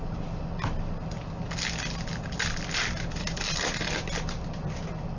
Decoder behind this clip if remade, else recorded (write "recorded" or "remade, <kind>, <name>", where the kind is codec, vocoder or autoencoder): recorded